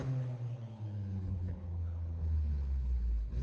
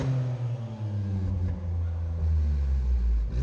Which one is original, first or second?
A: second